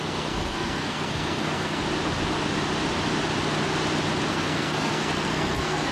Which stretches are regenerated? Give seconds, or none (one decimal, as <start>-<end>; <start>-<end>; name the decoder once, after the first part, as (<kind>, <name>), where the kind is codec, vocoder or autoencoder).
0.0-1.8 (codec, SNAC); 4.3-5.9